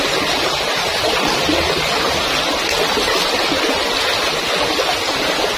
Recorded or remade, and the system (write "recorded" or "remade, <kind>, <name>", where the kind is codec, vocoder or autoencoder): recorded